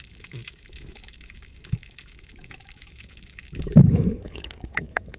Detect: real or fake fake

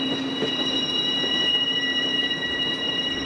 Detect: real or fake fake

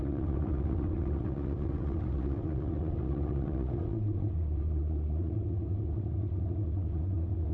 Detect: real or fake fake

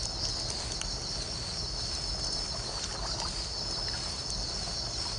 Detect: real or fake real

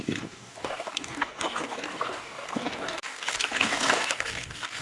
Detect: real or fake fake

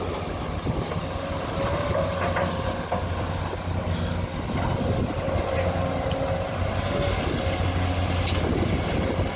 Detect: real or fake real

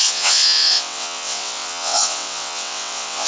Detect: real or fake fake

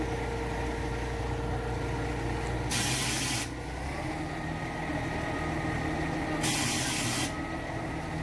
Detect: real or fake real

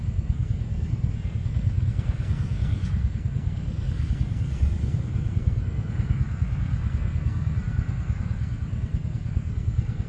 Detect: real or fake fake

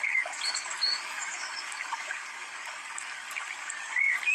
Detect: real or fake fake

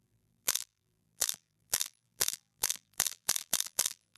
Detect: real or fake fake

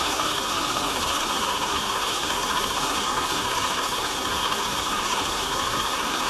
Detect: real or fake fake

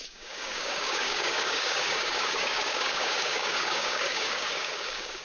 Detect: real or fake fake